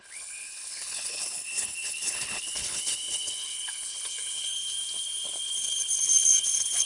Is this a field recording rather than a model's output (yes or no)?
no